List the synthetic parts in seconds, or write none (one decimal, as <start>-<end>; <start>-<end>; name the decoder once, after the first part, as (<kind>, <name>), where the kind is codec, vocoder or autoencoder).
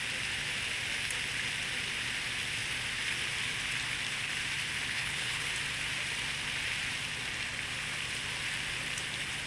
4.9-5.5 (codec, HILCodec)